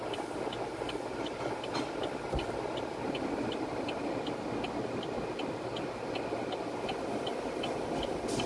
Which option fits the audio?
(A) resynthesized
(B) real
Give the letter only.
B